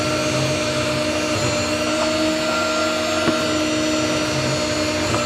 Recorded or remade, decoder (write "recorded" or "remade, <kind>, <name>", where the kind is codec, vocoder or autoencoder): recorded